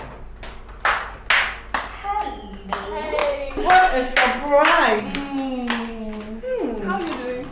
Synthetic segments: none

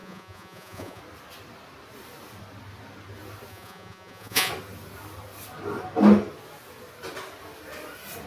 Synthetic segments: 0.0-1.0 (vocoder, Vocos); 3.5-4.5

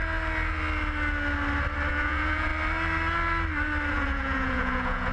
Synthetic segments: 1.9-2.5 (vocoder, Vocos); 3.9-5.1

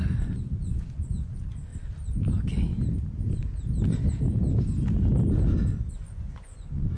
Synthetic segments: 0.0-1.7 (vocoder, Vocos); 5.9-7.0

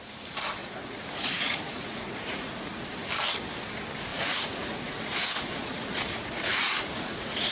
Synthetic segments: 0.6-3.1 (vocoder, Vocos); 4.1-7.5

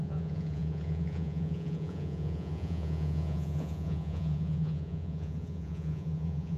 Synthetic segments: 0.0-6.6 (vocoder, Vocos)

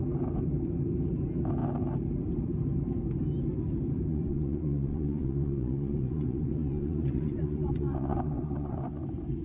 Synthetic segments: 4.1-9.0 (vocoder, Vocos)